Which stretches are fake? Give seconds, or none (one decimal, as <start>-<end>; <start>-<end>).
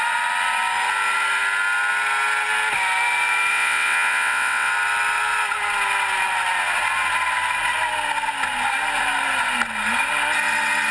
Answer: 3.5-4.7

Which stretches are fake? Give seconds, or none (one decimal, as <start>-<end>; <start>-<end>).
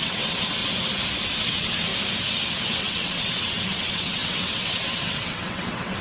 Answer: 0.0-0.6; 1.4-1.9; 2.5-6.0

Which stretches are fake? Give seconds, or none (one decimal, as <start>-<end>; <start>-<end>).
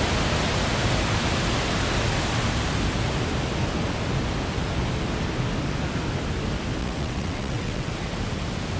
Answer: 6.8-7.9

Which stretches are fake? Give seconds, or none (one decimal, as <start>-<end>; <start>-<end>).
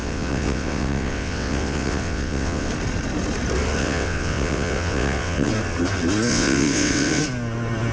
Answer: 0.0-2.7; 3.8-5.5; 6.3-7.2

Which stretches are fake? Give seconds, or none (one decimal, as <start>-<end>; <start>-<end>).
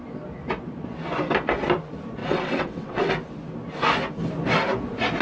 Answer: 2.2-3.1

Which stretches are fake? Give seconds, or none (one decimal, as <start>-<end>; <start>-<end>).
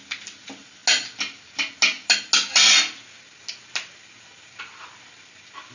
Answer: none